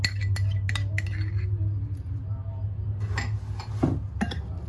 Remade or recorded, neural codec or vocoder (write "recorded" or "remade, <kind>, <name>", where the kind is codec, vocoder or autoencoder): recorded